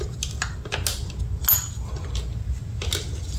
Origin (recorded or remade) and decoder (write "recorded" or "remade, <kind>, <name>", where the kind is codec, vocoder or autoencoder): recorded